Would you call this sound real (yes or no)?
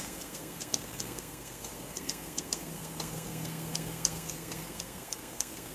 no